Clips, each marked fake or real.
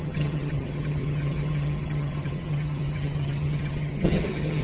fake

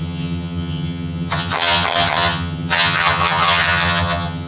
fake